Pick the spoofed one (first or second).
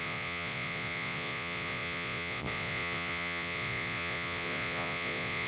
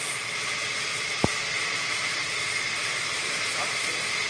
first